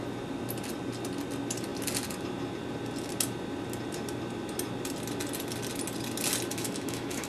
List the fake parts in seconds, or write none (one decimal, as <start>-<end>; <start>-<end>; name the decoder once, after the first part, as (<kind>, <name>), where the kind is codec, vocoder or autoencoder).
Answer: 6.5-7.3 (autoencoder, DAC-VAE)